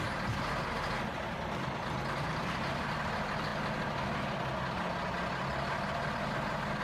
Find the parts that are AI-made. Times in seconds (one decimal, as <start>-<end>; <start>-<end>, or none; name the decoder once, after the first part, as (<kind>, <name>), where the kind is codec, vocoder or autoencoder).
none